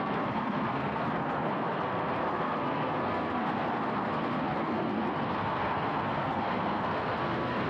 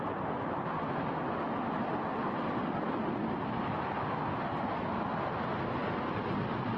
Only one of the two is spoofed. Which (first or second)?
first